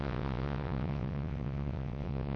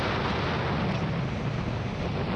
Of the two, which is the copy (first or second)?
first